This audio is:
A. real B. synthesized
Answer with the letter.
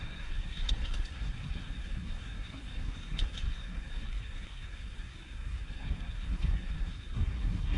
B